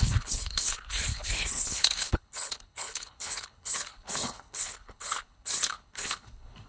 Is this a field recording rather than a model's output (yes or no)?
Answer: no